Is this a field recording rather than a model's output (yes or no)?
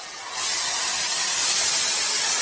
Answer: yes